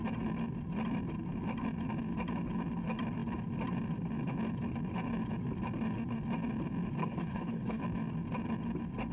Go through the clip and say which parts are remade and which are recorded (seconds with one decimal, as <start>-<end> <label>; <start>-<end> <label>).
0.0-7.0 recorded; 7.0-7.8 remade; 7.8-9.1 recorded